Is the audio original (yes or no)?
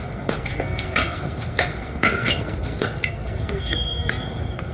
no